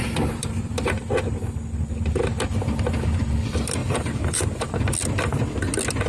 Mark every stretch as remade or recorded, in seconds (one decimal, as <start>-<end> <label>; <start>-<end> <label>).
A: 0.0-1.1 remade; 1.1-3.8 recorded; 3.8-4.7 remade; 4.7-6.1 recorded